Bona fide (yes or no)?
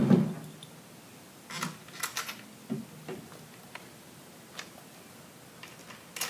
yes